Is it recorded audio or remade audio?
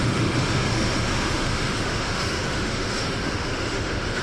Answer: remade